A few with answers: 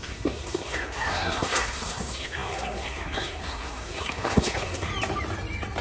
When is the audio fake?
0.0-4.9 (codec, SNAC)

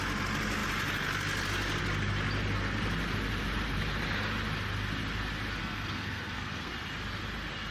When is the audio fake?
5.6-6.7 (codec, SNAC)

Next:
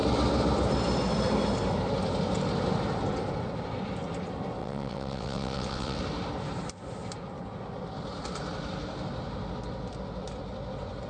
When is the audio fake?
4.6-6.0 (vocoder, WaveNeXt)

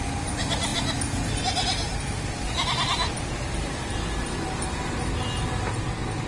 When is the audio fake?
none

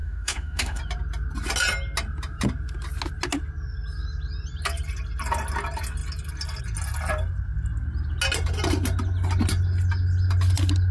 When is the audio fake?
0.0-0.8 (autoencoder, DAC-VAE)

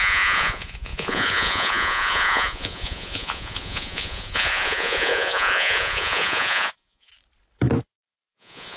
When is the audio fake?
0.0-7.1 (vocoder, Vocos); 8.3-8.8

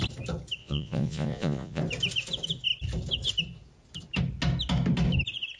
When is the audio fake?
0.6-1.8 (vocoder, Vocos)

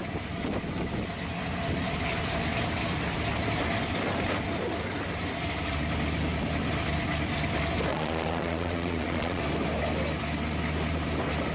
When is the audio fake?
7.9-9.4 (vocoder, Vocos)